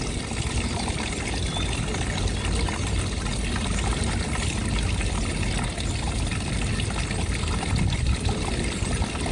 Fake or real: real